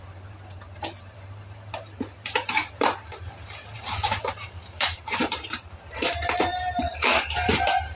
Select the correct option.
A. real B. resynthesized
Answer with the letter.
B